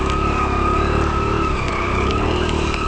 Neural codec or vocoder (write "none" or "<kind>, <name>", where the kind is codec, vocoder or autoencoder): codec, DAC